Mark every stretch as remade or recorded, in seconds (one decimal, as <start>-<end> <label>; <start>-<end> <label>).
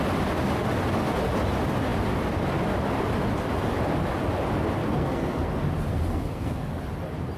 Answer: 0.0-4.8 recorded; 4.8-5.5 remade; 5.5-5.9 recorded; 5.9-6.8 remade; 6.8-7.4 recorded